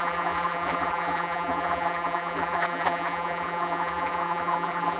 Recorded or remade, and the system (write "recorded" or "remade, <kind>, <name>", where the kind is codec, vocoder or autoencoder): remade, vocoder, BigVGAN v2